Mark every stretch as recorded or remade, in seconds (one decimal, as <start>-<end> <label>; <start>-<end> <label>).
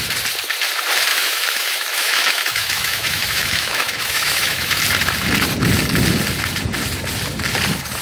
0.0-1.1 recorded; 1.1-4.8 remade; 4.8-8.0 recorded